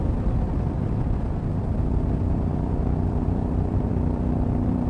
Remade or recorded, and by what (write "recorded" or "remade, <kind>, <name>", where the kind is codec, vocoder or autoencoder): remade, vocoder, BigVGAN v2